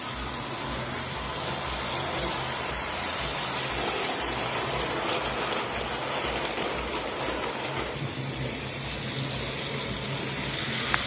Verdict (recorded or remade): recorded